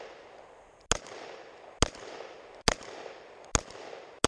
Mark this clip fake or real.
real